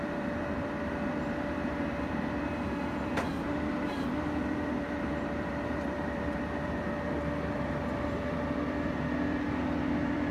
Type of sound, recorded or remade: remade